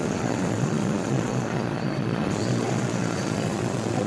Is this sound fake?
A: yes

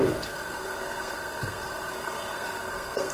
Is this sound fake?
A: yes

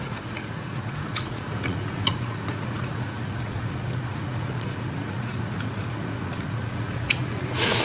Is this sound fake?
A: yes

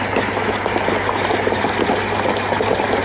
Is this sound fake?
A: no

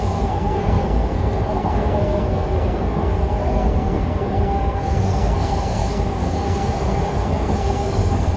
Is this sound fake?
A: yes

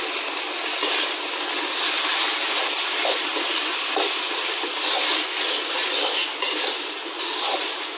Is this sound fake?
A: no